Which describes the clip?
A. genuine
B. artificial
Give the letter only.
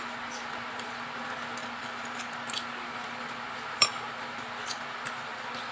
A